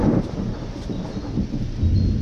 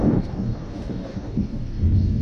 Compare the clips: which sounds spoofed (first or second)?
second